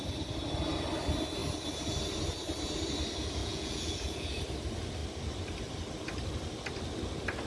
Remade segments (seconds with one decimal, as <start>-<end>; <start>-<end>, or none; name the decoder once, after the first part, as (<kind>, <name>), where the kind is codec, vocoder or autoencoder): 3.4-4.4 (vocoder, Vocos)